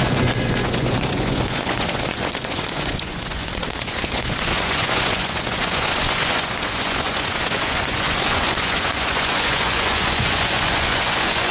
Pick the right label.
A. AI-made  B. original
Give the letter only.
A